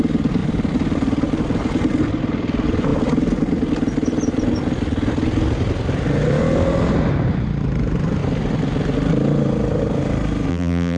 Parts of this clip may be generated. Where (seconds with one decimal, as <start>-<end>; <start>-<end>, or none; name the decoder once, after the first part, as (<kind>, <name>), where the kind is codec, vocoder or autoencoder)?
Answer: 10.5-11.0 (vocoder, BigVGAN v2)